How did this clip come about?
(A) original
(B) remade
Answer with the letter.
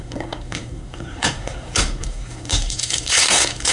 B